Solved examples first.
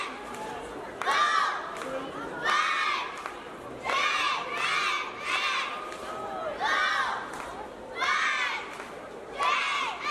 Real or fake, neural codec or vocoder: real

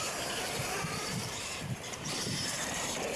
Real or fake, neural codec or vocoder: fake, vocoder, BigVGAN v2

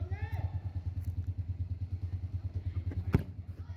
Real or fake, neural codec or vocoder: real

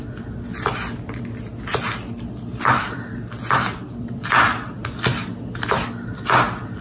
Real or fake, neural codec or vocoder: real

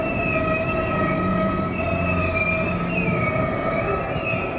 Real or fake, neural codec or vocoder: fake, vocoder, BigVGAN v2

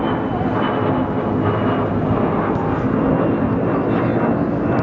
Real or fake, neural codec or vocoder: real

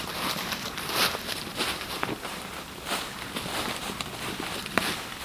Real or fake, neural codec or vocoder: fake, vocoder, BigVGAN v2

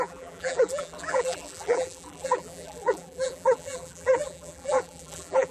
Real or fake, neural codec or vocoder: fake, vocoder, BigVGAN v2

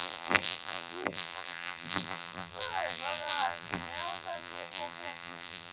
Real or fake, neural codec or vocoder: fake, vocoder, BigVGAN v2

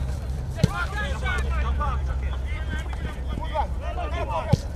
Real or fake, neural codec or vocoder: fake, vocoder, BigVGAN v2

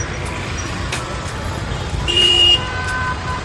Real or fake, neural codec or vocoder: fake, vocoder, BigVGAN v2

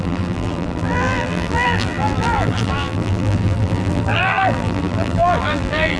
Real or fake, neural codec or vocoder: fake, vocoder, BigVGAN v2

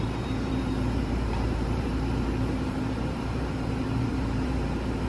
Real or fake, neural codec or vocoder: fake, vocoder, BigVGAN v2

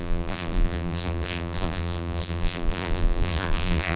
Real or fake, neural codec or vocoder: fake, vocoder, BigVGAN v2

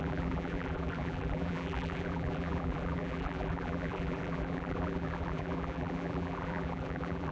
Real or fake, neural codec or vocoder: fake, vocoder, BigVGAN v2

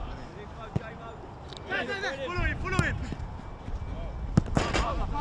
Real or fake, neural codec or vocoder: real